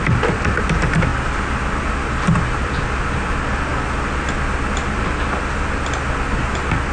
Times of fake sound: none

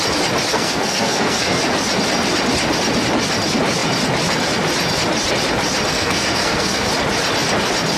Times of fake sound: 0.5-1.6 (codec, SNAC); 5.9-6.9

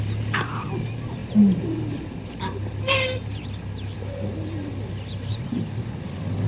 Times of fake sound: none

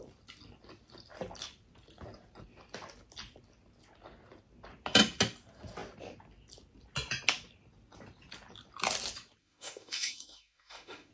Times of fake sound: 9.4-11.1 (autoencoder, DAC-VAE)

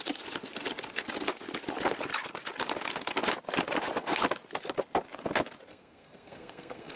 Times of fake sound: 5.7-7.0 (codec, SNAC)

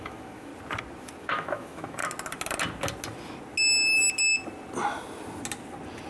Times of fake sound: 0.0-0.5 (autoencoder, DAC-VAE); 1.2-2.0